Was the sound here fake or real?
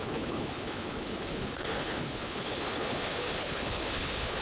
fake